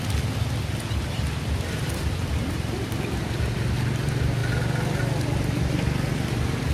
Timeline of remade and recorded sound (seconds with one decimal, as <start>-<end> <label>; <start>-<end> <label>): 0.0-6.7 recorded